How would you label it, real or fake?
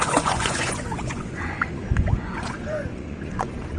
fake